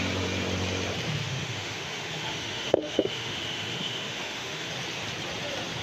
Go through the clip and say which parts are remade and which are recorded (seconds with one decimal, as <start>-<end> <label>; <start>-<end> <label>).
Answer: 0.0-1.2 recorded; 1.2-4.7 remade; 4.7-5.8 recorded